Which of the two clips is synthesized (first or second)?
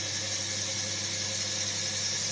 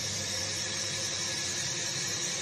second